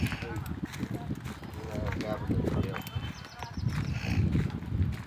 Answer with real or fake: real